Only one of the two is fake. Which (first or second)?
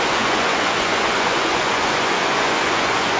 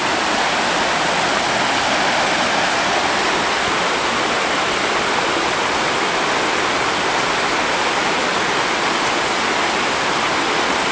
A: first